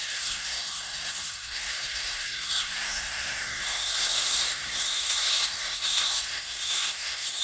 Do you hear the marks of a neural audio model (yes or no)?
yes